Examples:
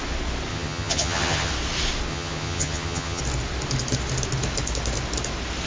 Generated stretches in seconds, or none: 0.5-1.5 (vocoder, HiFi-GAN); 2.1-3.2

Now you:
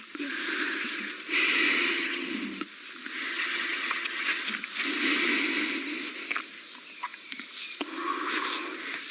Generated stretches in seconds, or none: 1.7-2.3 (vocoder, HiFi-GAN); 3.3-4.4

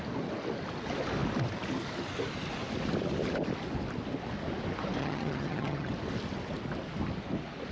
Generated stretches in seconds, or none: 5.0-5.9 (vocoder, HiFi-GAN)

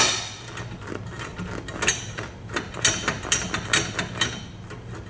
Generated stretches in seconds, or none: none

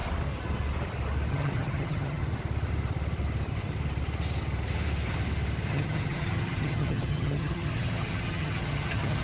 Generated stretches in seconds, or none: 1.3-2.2 (vocoder, HiFi-GAN); 5.7-9.2